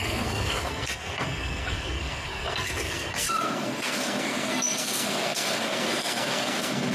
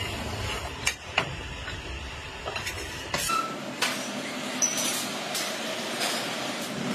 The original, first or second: second